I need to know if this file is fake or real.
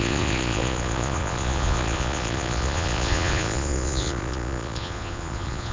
fake